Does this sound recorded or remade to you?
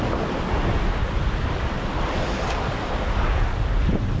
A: recorded